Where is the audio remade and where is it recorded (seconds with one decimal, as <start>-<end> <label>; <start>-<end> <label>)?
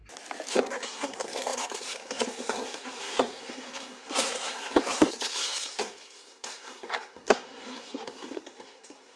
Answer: 0.0-0.5 recorded; 0.5-9.2 remade